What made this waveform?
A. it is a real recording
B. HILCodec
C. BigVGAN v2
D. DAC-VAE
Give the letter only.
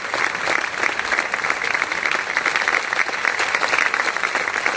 A